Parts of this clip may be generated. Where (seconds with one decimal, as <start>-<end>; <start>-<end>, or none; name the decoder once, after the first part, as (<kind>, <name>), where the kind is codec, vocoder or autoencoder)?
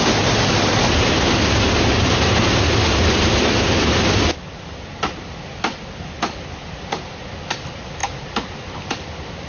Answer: none